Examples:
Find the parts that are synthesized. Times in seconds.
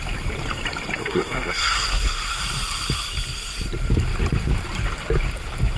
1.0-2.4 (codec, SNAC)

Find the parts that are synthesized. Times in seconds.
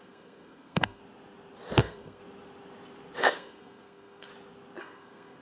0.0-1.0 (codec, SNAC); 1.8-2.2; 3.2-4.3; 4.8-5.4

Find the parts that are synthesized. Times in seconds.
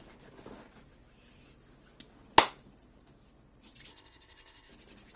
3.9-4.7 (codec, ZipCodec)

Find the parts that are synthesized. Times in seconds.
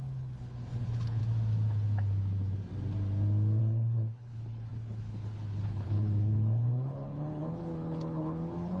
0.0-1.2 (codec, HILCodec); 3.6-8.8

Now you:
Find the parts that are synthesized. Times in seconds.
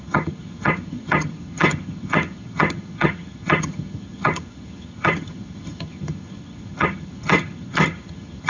0.0-8.5 (vocoder, HiFi-GAN)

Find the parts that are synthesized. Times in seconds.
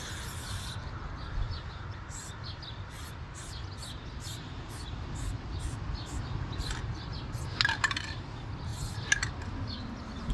none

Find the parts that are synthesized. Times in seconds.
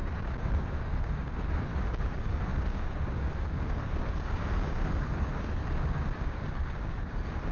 0.0-7.5 (codec, DAC)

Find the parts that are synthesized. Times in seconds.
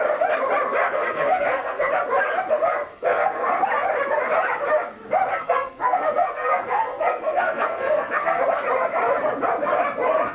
0.8-1.9 (codec, SNAC); 2.9-3.5; 5.3-8.4